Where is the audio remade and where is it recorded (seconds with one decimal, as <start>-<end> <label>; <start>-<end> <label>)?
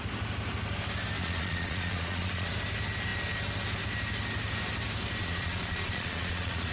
0.0-1.2 recorded; 1.2-2.5 remade; 2.5-5.2 recorded; 5.2-6.7 remade